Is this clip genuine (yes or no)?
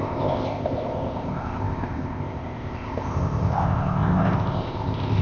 no